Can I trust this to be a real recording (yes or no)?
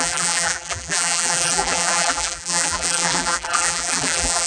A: no